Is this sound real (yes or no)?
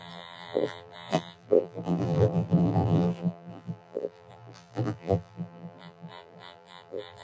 no